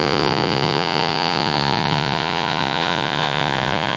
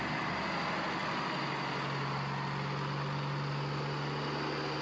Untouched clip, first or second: second